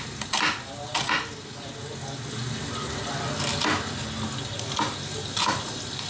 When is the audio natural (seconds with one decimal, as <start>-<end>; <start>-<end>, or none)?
0.0-6.1